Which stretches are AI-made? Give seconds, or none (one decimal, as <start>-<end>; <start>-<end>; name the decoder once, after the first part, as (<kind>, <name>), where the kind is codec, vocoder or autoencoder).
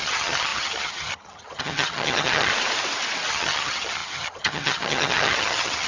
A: 0.0-2.5 (vocoder, HiFi-GAN); 3.3-5.9